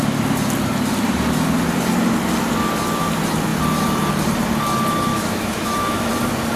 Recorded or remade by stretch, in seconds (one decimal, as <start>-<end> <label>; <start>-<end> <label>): 0.0-5.1 recorded; 5.1-6.1 remade; 6.1-6.6 recorded